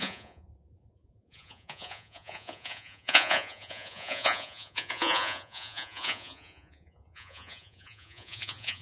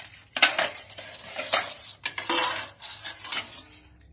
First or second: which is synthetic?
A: first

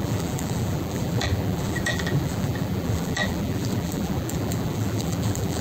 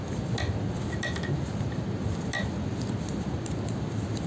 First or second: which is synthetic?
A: first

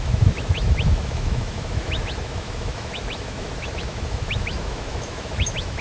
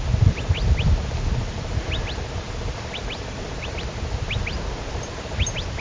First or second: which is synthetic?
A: first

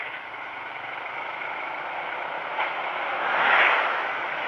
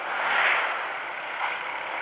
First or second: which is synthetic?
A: first